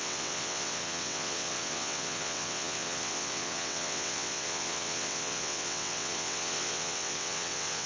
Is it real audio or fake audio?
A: fake